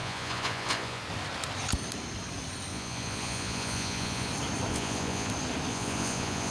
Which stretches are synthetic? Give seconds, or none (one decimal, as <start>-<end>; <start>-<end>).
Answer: 0.0-1.0; 2.7-4.3; 4.7-5.3; 5.7-6.5